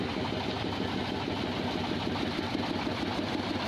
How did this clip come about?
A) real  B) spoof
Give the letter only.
A